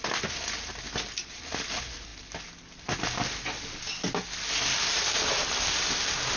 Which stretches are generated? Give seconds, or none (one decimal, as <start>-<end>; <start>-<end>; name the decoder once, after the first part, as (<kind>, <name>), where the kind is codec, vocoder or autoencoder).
none